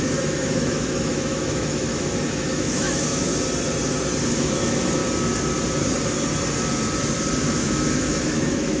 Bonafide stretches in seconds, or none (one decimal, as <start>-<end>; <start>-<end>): 3.3-4.3; 5.0-7.4